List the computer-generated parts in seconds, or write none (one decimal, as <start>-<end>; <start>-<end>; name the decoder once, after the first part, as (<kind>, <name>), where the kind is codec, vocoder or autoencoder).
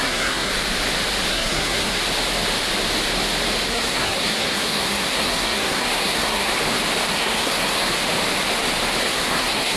0.0-0.5 (codec, SNAC); 1.3-2.0; 3.7-6.5; 7.1-8.0; 9.0-9.8